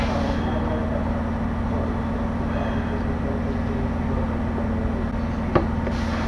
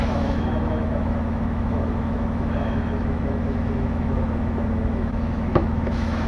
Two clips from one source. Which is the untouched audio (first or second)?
first